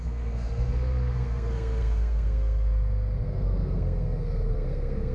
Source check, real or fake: fake